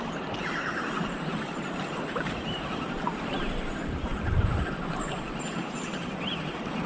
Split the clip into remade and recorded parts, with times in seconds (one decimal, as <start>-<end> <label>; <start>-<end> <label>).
0.0-0.4 recorded; 0.4-3.6 remade; 3.6-6.9 recorded